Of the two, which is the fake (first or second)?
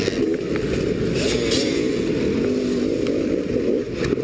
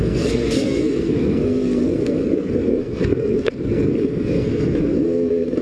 second